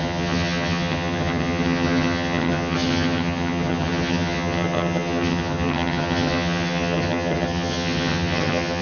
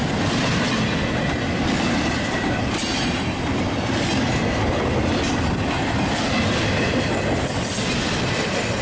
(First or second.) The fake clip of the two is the first